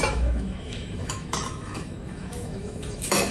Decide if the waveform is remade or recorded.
remade